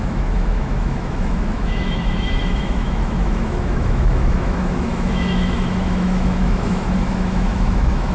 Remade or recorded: remade